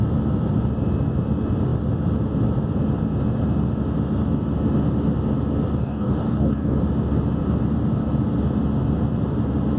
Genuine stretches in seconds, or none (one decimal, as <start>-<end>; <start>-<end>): 0.0-5.8; 6.8-9.8